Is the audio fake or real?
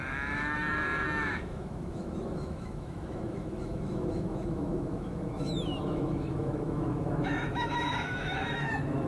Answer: fake